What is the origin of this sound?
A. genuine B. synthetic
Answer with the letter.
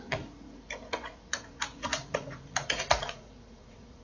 B